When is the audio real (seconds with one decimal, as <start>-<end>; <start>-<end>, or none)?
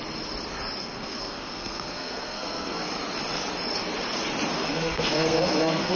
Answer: 0.0-0.8; 2.9-4.6